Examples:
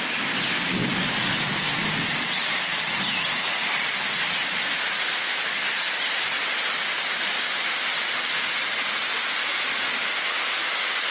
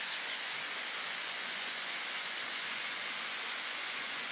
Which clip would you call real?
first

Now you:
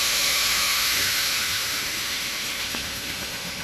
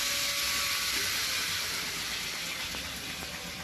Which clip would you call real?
second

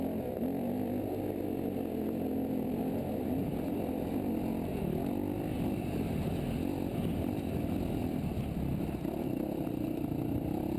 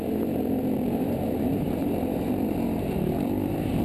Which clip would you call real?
first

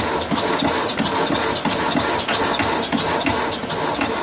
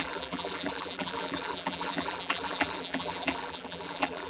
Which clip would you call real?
first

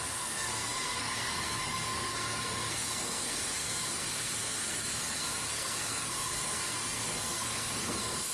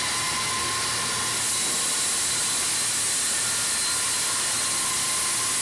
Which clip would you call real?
second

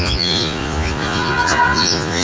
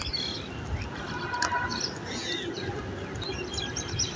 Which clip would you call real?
second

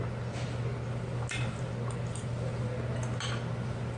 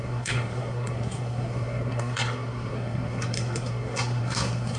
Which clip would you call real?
first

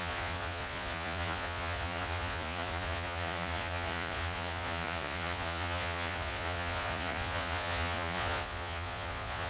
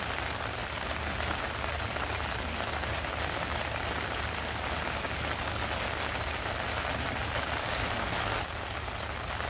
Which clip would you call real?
second